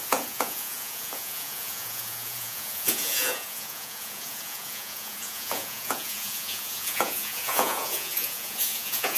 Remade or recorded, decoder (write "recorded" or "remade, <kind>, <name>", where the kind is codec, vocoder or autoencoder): remade, vocoder, Vocos